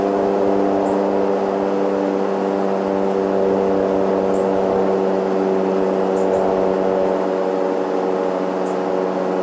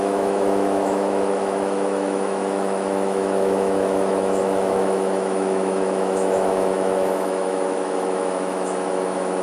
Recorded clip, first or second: first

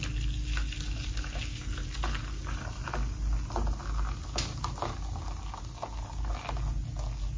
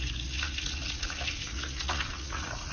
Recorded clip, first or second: first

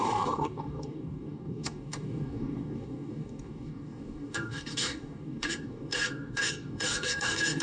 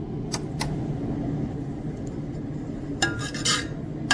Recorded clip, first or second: second